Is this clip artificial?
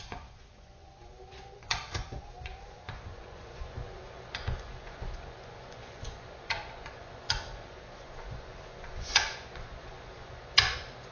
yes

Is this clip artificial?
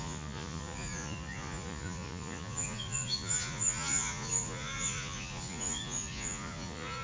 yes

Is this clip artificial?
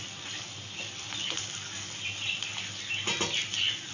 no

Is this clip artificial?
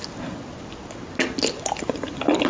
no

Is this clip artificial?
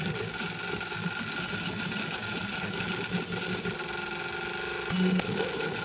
no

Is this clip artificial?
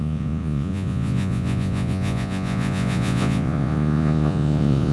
yes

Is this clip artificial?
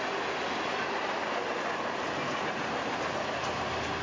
no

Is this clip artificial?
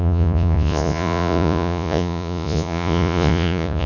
yes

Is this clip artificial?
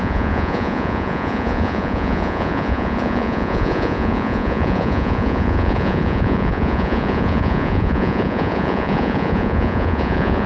yes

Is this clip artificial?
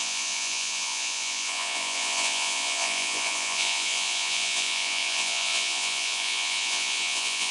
yes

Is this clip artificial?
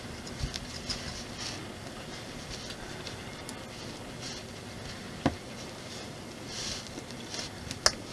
no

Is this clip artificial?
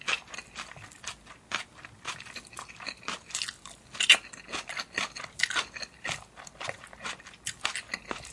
no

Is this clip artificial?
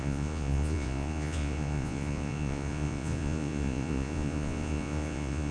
yes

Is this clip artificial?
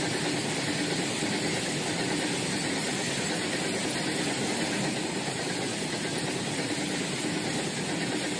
no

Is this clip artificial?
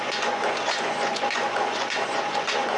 yes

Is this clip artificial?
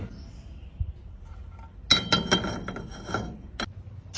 no